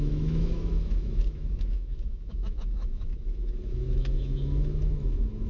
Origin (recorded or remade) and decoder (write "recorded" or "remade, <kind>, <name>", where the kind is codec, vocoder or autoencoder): remade, autoencoder, DAC-VAE